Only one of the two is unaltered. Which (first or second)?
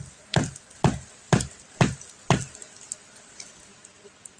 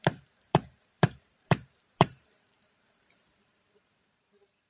first